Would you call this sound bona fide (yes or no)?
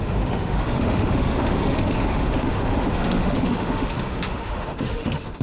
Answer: no